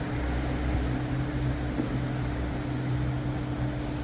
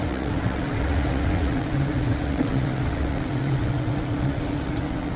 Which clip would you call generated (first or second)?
second